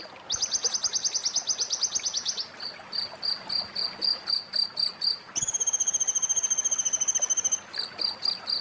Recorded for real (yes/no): yes